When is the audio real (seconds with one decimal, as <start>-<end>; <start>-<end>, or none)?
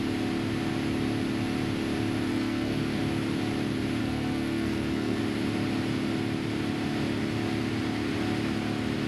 0.0-2.3; 3.0-4.0; 5.2-9.1